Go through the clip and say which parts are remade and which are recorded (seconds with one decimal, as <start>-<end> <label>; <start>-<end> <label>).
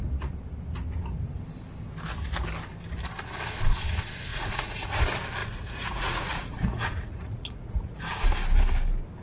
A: 0.0-4.3 recorded; 4.3-5.0 remade; 5.0-5.4 recorded; 5.4-8.0 remade; 8.0-9.2 recorded